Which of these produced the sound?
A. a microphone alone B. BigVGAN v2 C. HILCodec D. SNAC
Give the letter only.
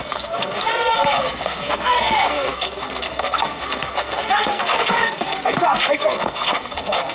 D